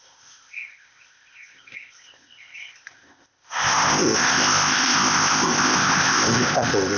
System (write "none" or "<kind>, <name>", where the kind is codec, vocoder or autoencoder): codec, ZipCodec